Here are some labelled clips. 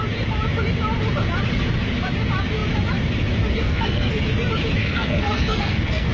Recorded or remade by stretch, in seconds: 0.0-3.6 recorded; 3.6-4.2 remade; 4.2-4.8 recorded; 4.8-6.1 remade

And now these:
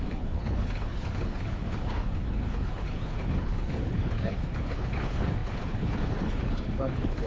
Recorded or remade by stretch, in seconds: 0.0-7.3 remade

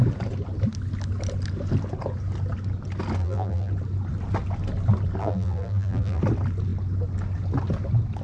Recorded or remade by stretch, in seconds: 0.0-3.2 recorded; 3.2-3.7 remade; 3.7-5.2 recorded; 5.2-6.2 remade; 6.2-8.2 recorded